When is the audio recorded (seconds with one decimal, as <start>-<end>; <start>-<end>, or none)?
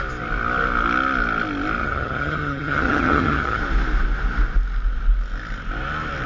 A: 0.0-1.8; 3.6-6.3